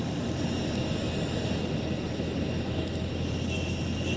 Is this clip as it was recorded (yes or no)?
yes